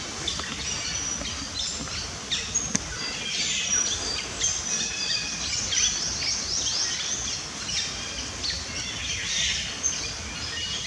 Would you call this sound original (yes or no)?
yes